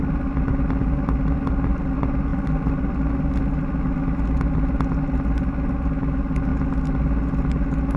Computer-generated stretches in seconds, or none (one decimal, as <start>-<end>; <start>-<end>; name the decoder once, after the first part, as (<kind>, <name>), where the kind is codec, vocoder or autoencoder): none